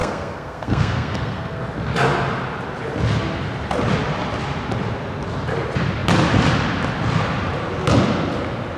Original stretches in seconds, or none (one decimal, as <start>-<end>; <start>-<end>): 1.6-8.8